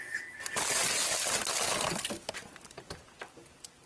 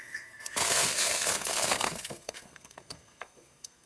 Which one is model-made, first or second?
second